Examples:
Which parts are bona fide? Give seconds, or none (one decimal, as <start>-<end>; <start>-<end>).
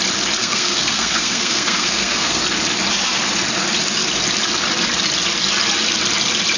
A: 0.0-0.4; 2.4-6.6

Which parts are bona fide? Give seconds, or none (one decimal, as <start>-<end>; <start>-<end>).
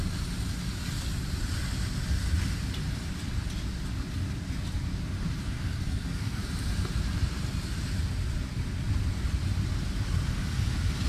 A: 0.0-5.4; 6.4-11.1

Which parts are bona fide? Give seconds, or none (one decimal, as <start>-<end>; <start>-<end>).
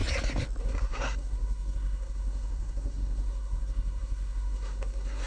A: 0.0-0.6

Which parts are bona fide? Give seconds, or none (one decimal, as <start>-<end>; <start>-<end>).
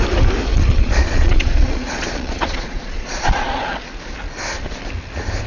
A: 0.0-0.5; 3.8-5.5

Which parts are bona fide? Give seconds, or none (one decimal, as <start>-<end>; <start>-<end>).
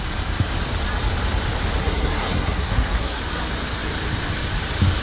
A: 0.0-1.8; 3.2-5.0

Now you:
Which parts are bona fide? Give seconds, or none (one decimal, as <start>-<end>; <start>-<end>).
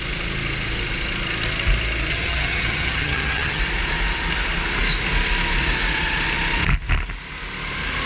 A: 0.0-2.1; 3.6-8.1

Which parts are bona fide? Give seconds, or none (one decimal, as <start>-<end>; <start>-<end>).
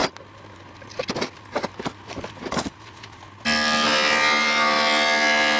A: 0.0-5.6